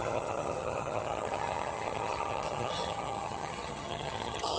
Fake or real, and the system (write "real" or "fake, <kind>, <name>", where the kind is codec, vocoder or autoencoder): fake, vocoder, HiFi-GAN